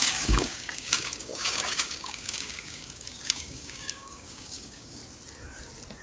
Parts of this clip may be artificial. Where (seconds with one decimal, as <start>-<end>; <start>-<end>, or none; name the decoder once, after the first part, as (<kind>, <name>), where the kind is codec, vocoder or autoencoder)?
0.0-5.0 (codec, DAC)